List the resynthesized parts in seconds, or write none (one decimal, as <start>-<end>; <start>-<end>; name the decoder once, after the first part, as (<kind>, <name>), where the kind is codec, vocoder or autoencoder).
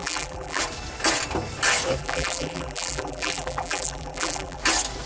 0.0-0.6 (vocoder, BigVGAN v2); 2.0-4.6